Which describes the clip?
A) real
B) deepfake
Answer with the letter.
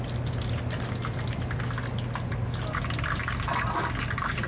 A